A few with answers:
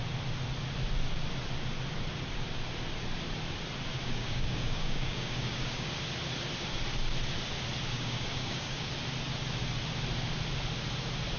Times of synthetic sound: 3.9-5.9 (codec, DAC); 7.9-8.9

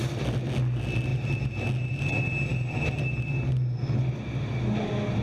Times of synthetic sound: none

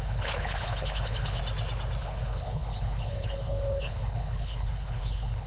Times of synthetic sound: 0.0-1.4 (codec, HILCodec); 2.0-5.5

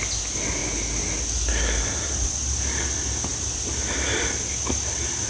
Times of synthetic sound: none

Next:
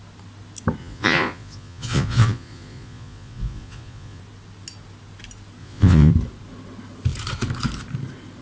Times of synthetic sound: 0.8-4.2 (vocoder, Vocos); 5.6-6.1

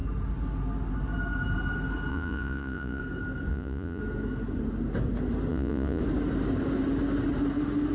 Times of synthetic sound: 2.1-3.0 (vocoder, Vocos); 3.5-4.0; 5.5-6.0